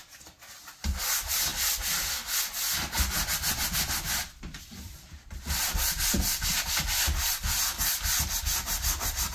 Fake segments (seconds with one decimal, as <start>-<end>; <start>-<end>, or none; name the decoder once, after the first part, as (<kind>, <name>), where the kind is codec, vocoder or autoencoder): none